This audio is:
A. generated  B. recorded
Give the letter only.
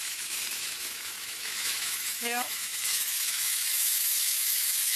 A